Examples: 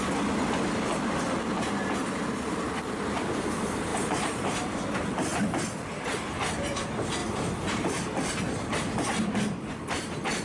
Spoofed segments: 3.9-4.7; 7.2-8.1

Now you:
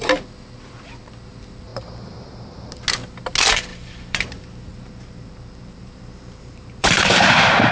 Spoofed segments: 3.7-7.7

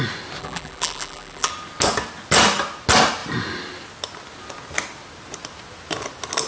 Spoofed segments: 0.4-1.5

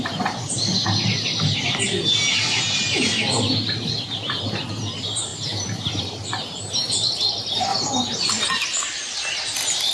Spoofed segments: 5.3-6.9; 7.7-8.5

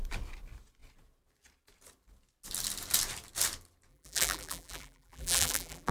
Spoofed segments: 3.9-5.9

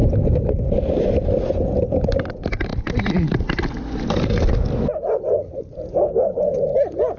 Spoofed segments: 0.0-2.3; 2.7-3.3

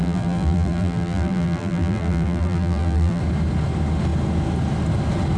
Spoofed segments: 0.0-3.2

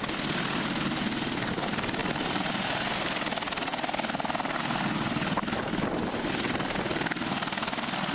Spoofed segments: 2.0-2.5